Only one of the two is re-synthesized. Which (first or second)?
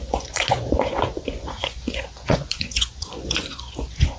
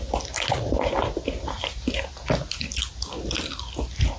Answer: first